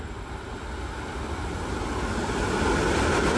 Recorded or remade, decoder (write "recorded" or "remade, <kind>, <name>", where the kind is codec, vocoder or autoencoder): recorded